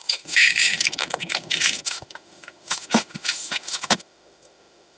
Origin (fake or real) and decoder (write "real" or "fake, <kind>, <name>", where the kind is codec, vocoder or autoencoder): fake, autoencoder, DAC-VAE